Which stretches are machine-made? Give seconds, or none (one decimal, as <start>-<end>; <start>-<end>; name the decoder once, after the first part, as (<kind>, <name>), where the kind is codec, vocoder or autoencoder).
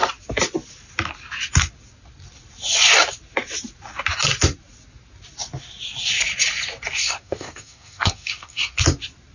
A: 7.0-8.8 (codec, SNAC)